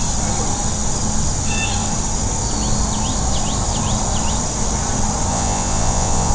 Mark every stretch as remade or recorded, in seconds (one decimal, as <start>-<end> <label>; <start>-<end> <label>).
0.0-5.3 recorded; 5.3-6.3 remade